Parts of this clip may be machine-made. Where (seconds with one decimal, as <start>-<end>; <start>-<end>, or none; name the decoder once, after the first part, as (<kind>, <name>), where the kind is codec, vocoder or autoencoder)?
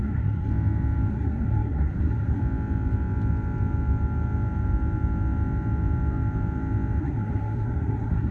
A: 0.0-0.5 (codec, SNAC); 1.1-2.4; 7.0-8.3